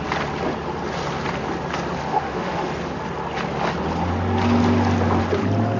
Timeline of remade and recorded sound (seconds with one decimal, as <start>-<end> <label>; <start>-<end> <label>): 0.0-2.1 recorded; 2.1-2.7 remade; 2.7-5.8 recorded